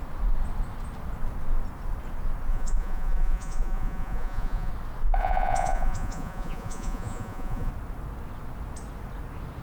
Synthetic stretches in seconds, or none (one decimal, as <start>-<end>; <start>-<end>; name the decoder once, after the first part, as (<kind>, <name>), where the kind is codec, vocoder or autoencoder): 2.5-4.7 (vocoder, Vocos); 5.2-7.7